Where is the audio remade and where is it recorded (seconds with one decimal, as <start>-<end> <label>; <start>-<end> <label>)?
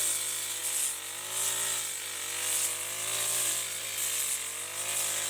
0.0-5.3 recorded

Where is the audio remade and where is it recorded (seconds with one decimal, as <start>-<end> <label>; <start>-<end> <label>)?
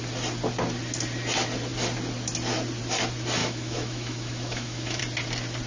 0.0-3.4 recorded; 3.4-5.0 remade; 5.0-5.7 recorded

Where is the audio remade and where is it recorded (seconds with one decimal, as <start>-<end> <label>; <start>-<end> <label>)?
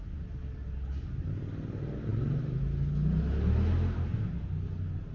0.0-5.1 recorded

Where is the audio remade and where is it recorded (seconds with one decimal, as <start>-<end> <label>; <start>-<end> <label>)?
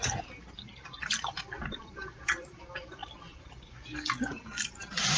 0.0-3.0 remade; 3.0-4.6 recorded; 4.6-5.2 remade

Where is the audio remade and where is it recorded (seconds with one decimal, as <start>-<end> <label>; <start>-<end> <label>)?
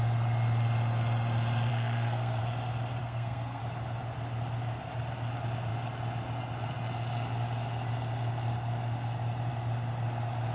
0.0-1.7 recorded; 1.7-2.4 remade; 2.4-3.0 recorded; 3.0-3.6 remade; 3.6-10.5 recorded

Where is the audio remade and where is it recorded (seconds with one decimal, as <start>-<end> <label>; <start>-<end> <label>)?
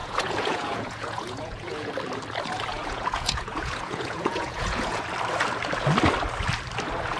0.0-1.9 remade; 1.9-2.7 recorded; 2.7-5.0 remade; 5.0-7.2 recorded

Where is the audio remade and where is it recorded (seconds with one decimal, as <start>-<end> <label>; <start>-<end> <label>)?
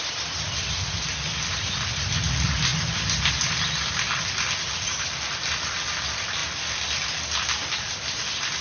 0.0-8.6 recorded